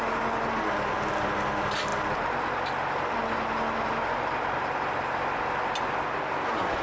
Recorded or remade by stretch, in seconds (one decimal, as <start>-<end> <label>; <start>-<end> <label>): 0.0-6.8 recorded